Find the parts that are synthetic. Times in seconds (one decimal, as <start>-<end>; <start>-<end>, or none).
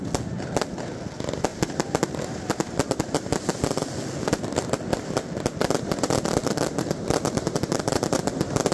1.5-2.5; 6.4-8.0